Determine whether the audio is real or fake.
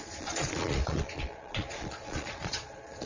fake